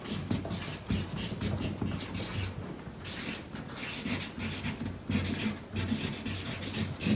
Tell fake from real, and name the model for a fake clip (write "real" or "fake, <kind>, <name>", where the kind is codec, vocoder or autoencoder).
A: real